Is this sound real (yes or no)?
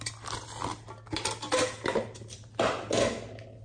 yes